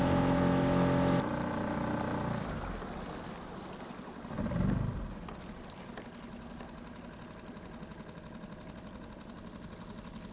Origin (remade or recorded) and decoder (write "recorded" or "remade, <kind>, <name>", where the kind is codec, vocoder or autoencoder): recorded